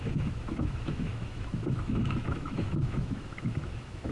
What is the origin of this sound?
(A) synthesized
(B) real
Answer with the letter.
A